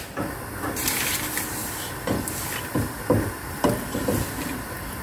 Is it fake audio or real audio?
real